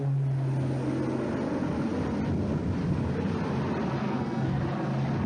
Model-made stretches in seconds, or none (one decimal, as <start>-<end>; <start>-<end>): 4.0-4.6